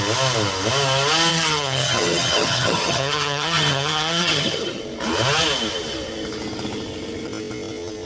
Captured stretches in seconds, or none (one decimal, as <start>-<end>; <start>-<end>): 0.0-1.3; 4.8-8.1